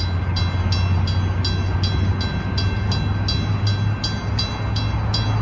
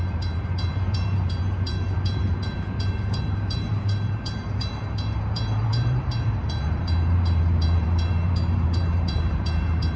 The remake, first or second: second